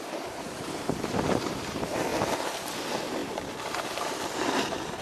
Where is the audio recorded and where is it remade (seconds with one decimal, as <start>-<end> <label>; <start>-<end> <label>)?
0.0-5.0 remade